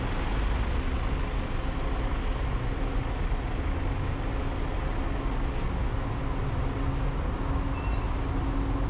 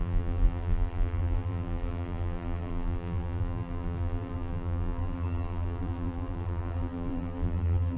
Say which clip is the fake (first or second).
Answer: second